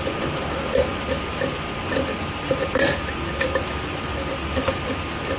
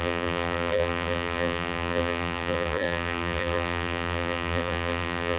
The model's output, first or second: second